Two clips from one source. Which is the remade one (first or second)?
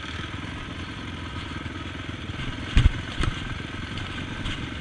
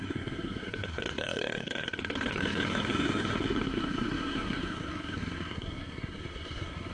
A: second